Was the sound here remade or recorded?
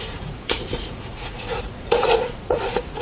remade